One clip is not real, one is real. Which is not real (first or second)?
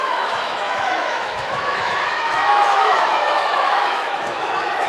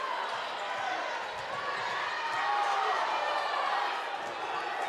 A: first